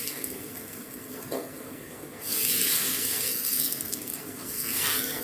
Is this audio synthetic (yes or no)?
yes